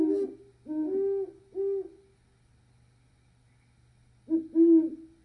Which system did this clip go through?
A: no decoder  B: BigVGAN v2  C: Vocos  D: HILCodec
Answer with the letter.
A